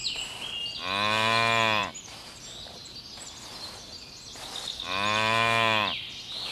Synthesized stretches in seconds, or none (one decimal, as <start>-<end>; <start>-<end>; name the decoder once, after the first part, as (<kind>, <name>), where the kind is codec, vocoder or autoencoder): 1.8-2.4 (vocoder, BigVGAN v2)